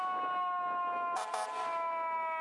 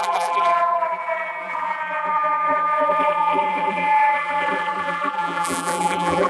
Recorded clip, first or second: first